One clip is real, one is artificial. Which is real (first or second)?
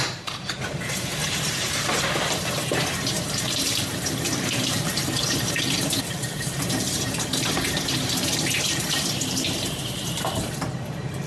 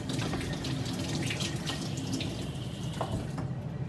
second